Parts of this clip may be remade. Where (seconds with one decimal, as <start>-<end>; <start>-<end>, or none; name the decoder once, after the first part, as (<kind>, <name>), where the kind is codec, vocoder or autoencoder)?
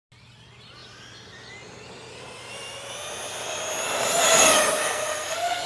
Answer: 4.8-5.7 (codec, SNAC)